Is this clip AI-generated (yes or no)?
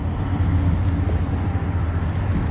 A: no